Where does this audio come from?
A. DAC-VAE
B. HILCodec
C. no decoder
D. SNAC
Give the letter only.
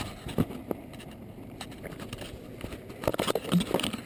C